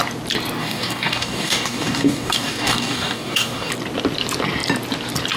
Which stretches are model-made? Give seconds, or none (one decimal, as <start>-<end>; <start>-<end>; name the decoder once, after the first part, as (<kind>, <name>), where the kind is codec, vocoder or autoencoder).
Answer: 0.6-3.7 (codec, DAC)